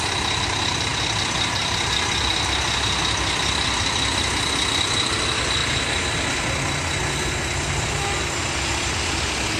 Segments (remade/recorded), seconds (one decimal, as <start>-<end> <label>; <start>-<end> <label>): 0.0-9.6 recorded